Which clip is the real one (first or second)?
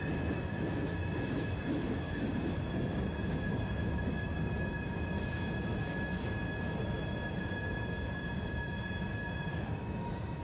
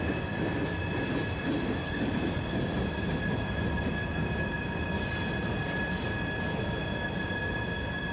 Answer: second